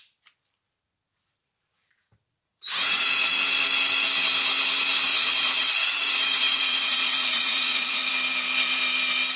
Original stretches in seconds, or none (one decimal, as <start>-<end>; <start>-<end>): 0.0-1.7; 3.3-5.1; 8.1-9.4